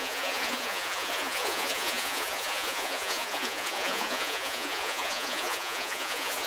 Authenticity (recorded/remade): remade